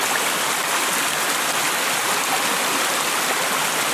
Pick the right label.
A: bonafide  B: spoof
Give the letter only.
A